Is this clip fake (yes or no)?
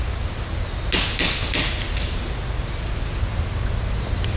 no